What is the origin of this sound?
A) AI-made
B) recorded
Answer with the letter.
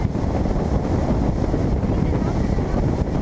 B